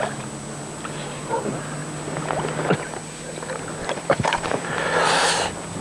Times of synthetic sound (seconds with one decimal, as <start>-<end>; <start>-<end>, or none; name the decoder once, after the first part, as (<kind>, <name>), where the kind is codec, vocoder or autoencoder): 3.8-4.7 (vocoder, BigVGAN v2)

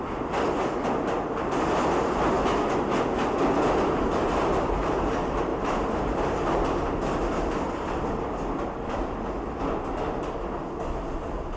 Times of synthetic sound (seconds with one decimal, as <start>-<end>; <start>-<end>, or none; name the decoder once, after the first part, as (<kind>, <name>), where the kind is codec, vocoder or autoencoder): 4.2-5.1 (vocoder, BigVGAN v2); 5.5-6.9

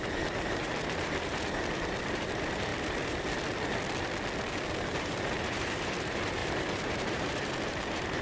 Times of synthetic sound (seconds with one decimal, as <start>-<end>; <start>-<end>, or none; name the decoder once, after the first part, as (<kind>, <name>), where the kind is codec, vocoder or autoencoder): 0.0-1.3 (vocoder, BigVGAN v2); 2.0-2.7; 5.0-8.2

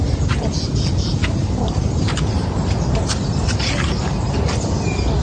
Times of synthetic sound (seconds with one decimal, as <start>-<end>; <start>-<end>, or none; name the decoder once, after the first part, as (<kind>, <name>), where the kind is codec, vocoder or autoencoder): 1.2-4.3 (vocoder, BigVGAN v2)

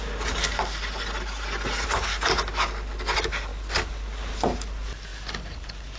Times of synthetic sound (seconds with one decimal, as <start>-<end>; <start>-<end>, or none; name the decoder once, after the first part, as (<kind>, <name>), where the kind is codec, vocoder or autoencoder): none